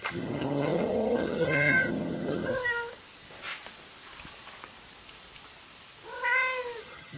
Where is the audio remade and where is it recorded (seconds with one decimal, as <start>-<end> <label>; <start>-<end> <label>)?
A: 0.0-2.5 remade; 2.5-6.8 recorded; 6.8-7.2 remade